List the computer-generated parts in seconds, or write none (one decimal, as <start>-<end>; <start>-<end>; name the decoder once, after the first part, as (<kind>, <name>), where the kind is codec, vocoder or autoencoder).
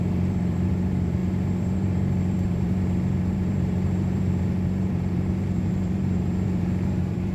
0.0-7.3 (vocoder, BigVGAN v2)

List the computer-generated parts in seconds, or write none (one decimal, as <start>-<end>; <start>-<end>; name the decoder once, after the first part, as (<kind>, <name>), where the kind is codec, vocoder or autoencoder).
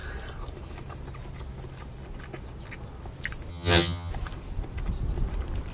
3.5-4.1 (vocoder, HiFi-GAN)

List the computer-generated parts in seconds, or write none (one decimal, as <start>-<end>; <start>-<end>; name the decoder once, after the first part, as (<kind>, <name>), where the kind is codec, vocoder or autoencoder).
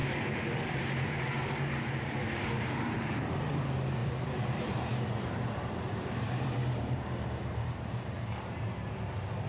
0.0-9.5 (vocoder, BigVGAN v2)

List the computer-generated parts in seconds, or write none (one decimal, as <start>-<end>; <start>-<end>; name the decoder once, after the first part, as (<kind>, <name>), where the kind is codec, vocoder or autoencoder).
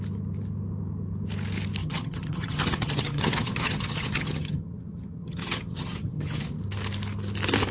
1.8-6.4 (vocoder, HiFi-GAN)